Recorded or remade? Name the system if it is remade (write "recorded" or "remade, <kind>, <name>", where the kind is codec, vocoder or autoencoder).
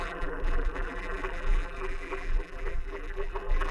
remade, vocoder, BigVGAN v2